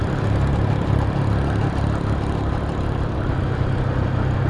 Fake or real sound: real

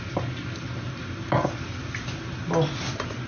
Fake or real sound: real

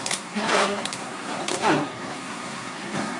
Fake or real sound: fake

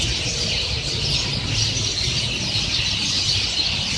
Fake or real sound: real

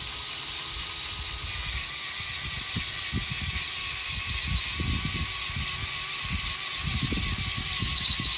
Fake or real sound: real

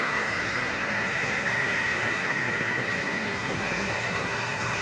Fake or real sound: fake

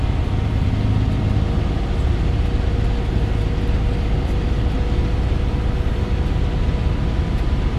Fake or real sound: real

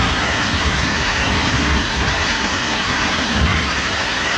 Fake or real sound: fake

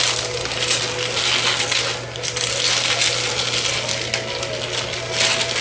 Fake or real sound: real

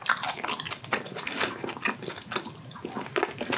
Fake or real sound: real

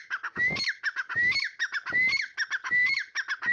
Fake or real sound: real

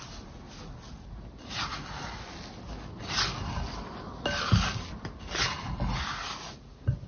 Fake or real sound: real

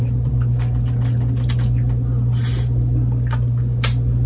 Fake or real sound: real